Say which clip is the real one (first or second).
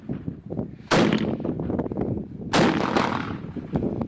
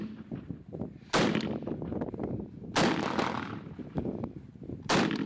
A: first